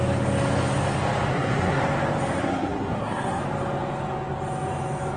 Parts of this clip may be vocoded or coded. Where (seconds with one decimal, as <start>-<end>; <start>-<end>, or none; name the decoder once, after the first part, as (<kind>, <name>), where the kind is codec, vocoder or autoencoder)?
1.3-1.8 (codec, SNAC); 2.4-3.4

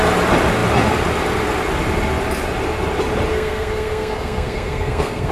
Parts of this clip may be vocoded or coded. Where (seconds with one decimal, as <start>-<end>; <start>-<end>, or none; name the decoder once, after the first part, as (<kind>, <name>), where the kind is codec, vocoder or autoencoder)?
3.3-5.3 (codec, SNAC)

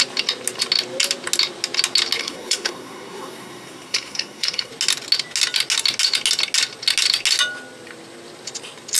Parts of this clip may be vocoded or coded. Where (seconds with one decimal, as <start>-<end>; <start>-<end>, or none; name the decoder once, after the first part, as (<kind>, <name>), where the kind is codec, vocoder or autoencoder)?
2.2-4.7 (codec, SNAC)

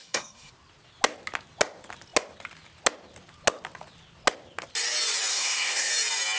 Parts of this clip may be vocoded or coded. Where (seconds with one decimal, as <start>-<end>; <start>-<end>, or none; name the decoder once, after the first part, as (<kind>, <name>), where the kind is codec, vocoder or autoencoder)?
0.0-0.5 (codec, SNAC); 5.3-5.9